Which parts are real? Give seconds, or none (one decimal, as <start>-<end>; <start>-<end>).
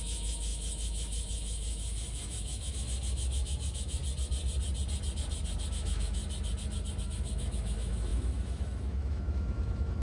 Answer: 4.0-5.7; 6.2-7.0